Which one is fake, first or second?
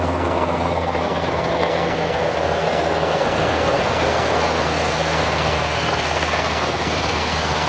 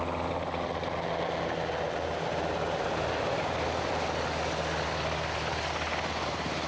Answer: first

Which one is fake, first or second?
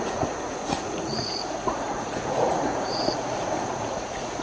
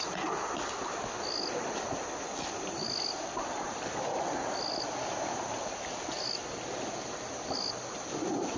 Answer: first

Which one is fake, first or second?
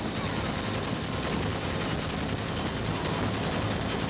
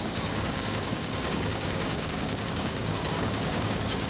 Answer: second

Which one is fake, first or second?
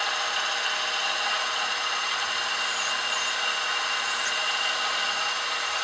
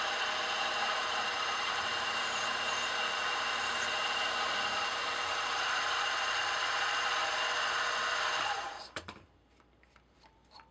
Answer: second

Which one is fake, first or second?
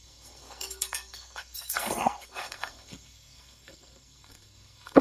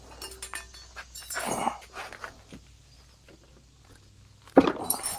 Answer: first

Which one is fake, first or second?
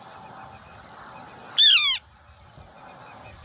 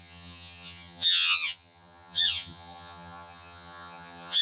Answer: second